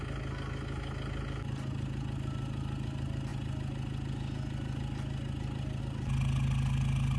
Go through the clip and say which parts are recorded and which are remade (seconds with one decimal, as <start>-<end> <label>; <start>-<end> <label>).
0.0-7.2 recorded

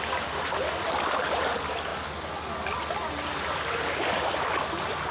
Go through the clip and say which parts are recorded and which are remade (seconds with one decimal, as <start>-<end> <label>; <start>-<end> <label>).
0.0-1.9 remade; 1.9-5.1 recorded